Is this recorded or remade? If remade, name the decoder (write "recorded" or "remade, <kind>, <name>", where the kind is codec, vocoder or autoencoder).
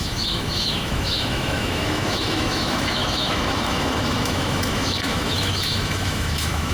remade, autoencoder, DAC-VAE